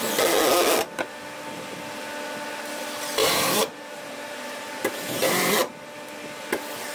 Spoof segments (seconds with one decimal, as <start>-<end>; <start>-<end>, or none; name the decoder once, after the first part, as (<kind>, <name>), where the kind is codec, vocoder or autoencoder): 3.2-5.5 (vocoder, BigVGAN v2)